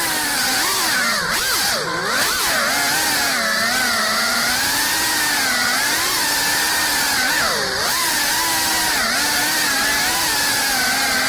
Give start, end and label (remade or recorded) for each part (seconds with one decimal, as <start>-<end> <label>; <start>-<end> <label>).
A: 0.0-4.3 recorded; 4.3-8.3 remade; 8.3-11.3 recorded